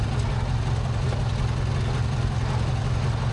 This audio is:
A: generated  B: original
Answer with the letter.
B